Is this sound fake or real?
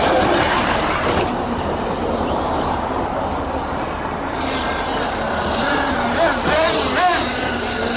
fake